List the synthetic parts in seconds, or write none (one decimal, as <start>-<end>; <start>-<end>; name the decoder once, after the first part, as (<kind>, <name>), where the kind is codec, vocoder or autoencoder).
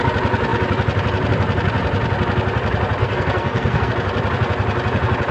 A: 3.0-3.9 (codec, SNAC)